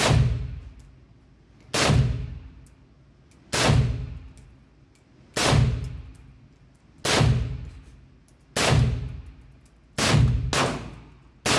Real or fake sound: real